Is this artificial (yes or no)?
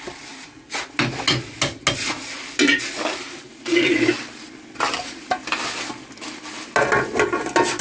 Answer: no